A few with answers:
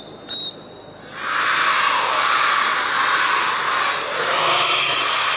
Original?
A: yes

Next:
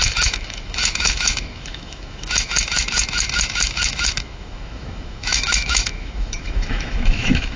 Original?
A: no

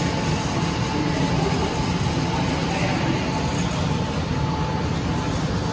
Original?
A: yes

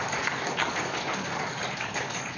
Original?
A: no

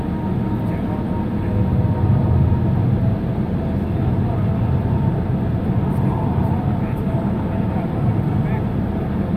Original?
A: yes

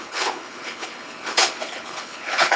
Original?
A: no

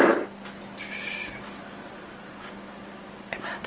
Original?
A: yes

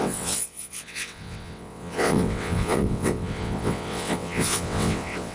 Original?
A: no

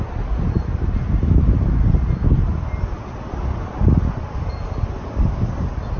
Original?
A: yes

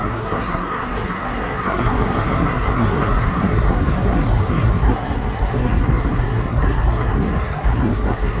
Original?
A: no